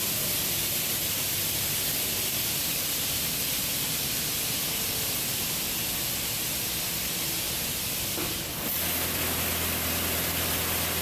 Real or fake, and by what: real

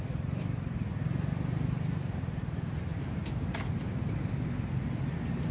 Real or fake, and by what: real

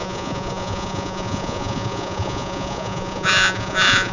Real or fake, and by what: fake, vocoder, Vocos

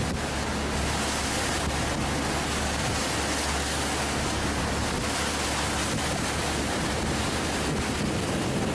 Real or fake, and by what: real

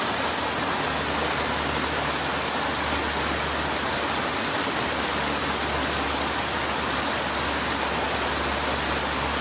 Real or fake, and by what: real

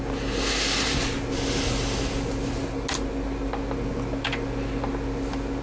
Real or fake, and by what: real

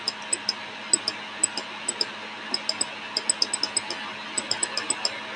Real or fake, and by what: real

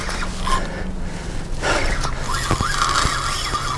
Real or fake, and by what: real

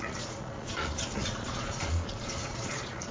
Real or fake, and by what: fake, vocoder, Vocos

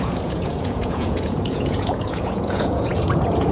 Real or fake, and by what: fake, vocoder, Vocos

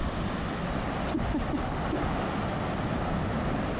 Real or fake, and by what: real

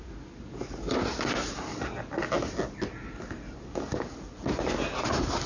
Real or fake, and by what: real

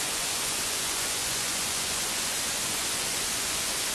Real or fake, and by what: fake, vocoder, Vocos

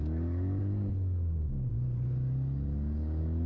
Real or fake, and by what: real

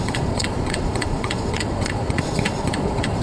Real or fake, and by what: fake, vocoder, Vocos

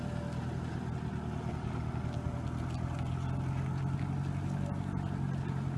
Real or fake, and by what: real